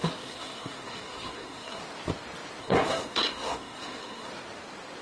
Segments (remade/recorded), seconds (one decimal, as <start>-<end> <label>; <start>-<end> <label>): 0.0-1.8 remade; 1.8-2.6 recorded; 2.6-4.3 remade; 4.3-5.0 recorded